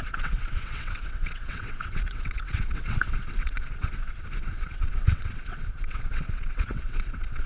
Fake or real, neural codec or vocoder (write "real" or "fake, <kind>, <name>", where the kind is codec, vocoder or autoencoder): fake, vocoder, WaveNeXt